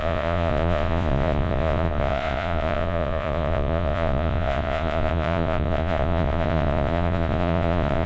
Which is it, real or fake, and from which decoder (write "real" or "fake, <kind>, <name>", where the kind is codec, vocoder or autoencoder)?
fake, vocoder, Vocos